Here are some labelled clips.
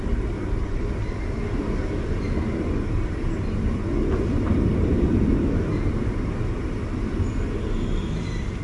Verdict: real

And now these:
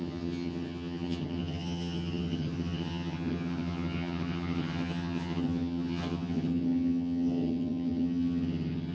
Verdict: fake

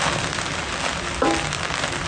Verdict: real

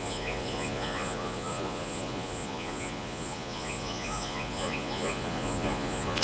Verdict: fake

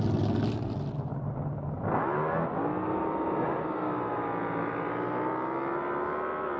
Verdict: real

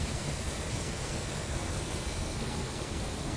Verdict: fake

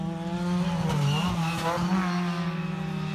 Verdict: real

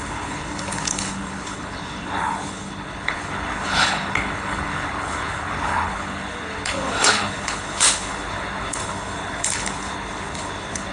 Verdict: fake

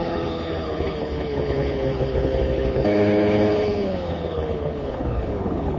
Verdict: fake